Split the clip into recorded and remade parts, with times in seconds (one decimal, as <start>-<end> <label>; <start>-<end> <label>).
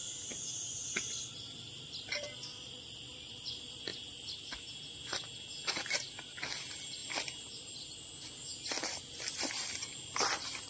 0.0-10.7 recorded